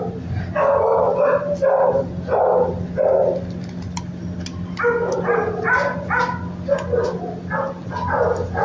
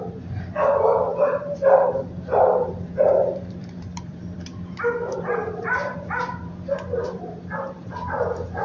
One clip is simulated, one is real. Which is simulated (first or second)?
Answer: second